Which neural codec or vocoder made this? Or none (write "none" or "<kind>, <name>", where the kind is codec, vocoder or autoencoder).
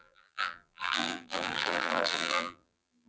vocoder, BigVGAN v2